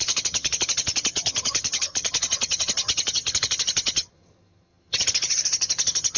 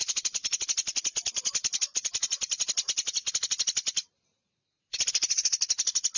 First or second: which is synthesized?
first